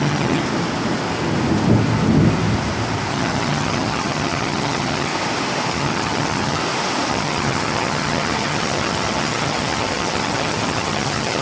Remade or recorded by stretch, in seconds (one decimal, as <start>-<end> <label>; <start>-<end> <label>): 0.0-0.4 remade; 0.4-3.1 recorded; 3.1-5.1 remade; 5.1-5.7 recorded; 5.7-6.6 remade; 6.6-7.1 recorded; 7.1-11.4 remade